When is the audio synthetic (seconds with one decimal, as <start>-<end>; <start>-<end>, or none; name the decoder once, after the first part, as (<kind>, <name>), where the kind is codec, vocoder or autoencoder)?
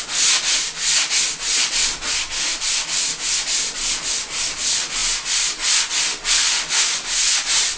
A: none